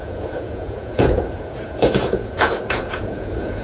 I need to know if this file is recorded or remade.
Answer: remade